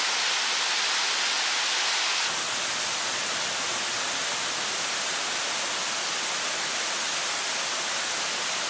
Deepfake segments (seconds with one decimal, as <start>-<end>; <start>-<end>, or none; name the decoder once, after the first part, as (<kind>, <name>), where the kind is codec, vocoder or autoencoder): none